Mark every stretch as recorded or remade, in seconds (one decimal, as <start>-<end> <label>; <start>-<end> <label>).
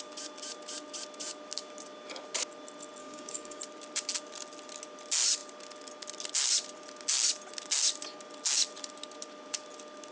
0.0-3.0 recorded; 3.0-3.6 remade; 3.6-10.1 recorded